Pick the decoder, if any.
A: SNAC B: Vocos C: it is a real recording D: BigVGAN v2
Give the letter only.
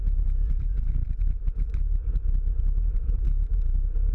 D